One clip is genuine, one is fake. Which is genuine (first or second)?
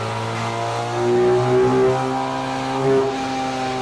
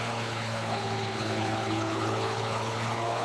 first